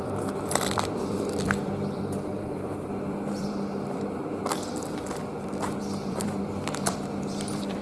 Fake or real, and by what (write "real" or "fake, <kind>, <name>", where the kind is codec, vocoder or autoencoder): fake, vocoder, BigVGAN v2